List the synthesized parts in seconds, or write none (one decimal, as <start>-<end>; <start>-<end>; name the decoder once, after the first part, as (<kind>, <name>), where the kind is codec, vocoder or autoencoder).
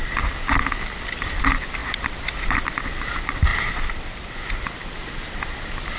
none